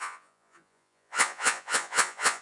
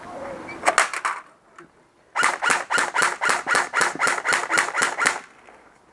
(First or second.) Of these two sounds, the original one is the second